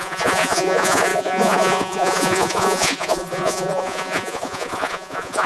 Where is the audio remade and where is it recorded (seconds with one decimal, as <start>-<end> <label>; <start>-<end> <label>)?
0.0-5.5 remade